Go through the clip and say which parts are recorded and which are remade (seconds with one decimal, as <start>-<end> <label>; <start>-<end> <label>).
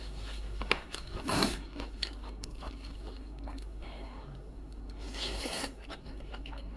0.0-6.8 remade